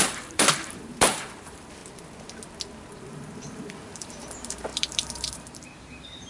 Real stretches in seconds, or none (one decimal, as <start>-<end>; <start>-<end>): 1.8-2.9